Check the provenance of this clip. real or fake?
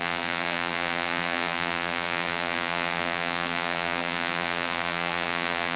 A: fake